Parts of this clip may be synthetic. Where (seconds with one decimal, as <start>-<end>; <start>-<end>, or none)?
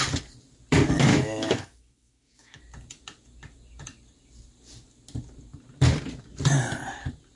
1.1-2.6